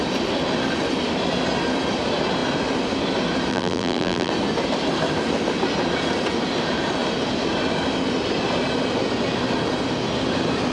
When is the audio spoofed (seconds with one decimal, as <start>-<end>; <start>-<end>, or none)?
3.5-4.3